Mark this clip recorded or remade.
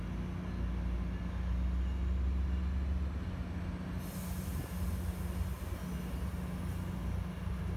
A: recorded